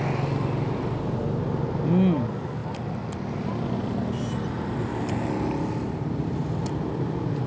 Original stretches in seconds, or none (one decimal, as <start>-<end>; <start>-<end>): 0.0-7.5